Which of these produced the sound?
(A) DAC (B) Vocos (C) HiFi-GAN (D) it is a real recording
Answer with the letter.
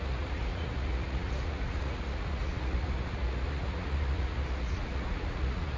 B